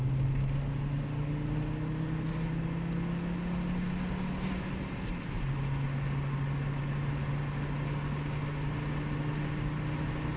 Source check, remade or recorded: recorded